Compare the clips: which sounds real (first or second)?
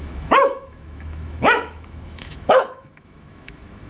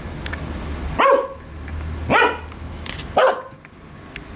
second